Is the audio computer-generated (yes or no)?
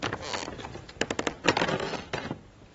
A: no